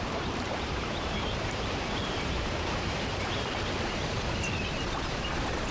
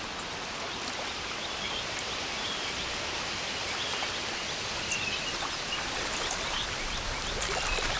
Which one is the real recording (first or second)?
second